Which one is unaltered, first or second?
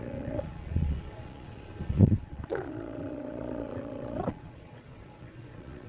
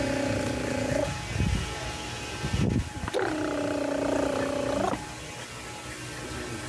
second